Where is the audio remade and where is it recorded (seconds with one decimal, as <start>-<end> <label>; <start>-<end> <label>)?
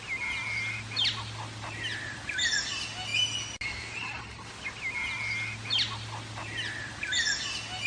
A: 0.0-7.9 recorded